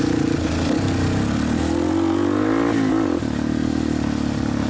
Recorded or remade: recorded